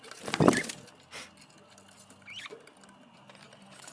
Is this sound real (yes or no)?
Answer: yes